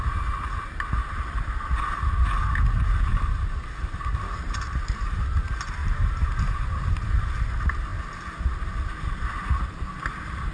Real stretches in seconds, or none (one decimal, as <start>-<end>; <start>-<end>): 0.0-3.1; 4.8-5.8; 6.9-10.5